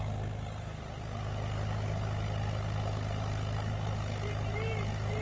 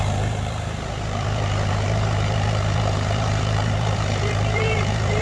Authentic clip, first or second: first